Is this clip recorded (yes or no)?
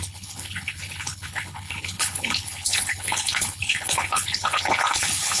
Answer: no